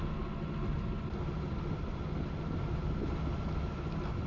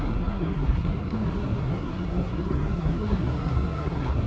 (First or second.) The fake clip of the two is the second